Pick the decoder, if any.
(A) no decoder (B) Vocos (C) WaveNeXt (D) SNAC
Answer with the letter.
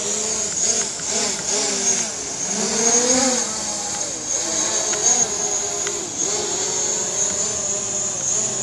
A